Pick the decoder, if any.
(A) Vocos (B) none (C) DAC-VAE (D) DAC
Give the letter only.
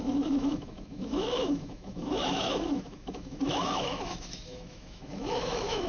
C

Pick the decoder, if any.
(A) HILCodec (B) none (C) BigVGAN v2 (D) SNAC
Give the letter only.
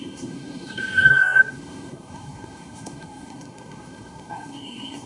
D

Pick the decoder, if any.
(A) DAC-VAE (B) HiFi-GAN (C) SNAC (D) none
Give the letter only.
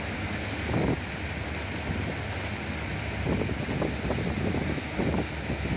D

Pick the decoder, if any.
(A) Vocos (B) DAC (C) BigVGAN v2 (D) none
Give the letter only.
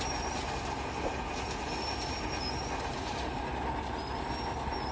D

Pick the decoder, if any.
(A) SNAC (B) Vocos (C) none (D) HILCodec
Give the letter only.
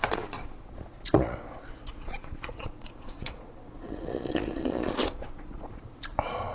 B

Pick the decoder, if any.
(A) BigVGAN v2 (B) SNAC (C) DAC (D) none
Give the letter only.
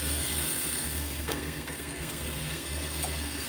B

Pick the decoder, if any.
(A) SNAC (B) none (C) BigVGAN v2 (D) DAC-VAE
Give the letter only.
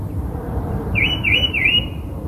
C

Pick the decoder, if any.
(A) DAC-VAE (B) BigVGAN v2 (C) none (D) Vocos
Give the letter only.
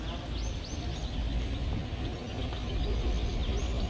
C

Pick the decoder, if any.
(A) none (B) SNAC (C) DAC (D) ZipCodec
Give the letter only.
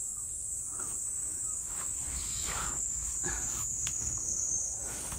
C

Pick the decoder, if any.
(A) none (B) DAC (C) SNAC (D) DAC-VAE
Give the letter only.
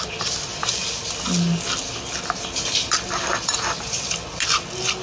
A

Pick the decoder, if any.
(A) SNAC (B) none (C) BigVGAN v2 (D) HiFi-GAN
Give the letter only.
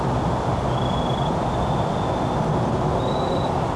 B